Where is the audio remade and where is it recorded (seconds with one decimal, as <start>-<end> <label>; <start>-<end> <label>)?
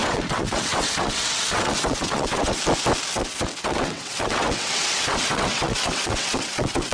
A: 0.0-2.6 remade; 2.6-3.1 recorded; 3.1-6.9 remade